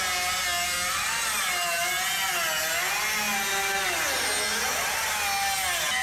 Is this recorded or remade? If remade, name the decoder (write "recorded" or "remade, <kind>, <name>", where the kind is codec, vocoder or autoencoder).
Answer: recorded